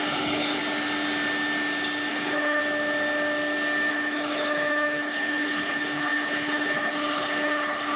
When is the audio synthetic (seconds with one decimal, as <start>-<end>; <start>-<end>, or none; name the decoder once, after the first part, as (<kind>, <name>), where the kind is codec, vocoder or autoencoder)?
0.0-0.6 (codec, HILCodec); 2.1-2.6; 3.9-8.0